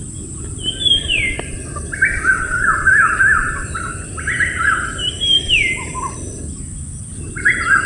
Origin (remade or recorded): remade